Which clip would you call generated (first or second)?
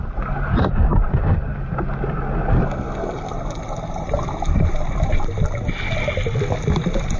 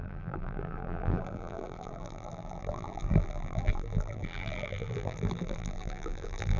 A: second